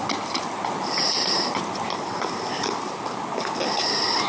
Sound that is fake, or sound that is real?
real